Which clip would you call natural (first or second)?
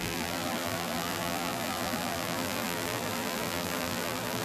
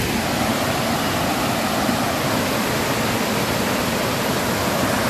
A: second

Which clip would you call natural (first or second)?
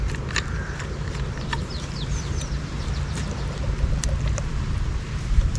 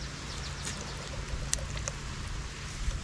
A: second